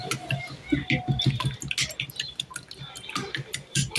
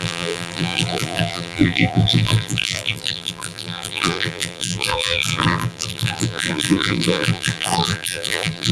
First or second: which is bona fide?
first